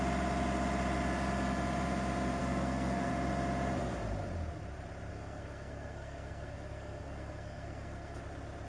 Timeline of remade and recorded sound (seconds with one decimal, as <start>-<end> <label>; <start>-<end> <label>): 0.0-2.4 recorded; 2.4-3.1 remade; 3.1-5.1 recorded; 5.1-8.2 remade; 8.2-8.7 recorded